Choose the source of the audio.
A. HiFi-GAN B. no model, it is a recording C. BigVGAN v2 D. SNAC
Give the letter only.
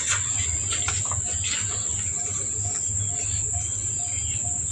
B